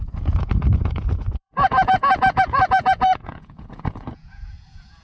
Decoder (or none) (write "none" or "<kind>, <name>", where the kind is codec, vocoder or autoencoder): vocoder, Vocos